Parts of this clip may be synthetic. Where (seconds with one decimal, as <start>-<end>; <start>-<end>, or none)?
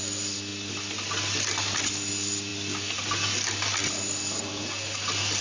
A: none